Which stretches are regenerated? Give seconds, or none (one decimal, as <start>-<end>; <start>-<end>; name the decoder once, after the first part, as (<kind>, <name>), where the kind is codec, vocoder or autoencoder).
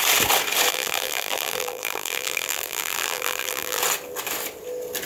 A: 0.7-3.8 (vocoder, BigVGAN v2)